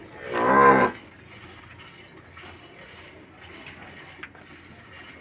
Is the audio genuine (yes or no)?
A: yes